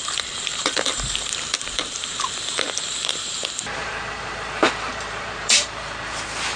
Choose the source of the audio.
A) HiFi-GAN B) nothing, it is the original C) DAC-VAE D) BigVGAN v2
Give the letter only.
D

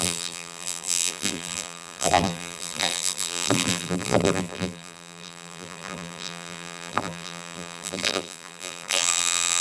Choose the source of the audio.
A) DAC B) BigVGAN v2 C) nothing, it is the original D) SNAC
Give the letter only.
B